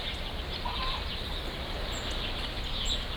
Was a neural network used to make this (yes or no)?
no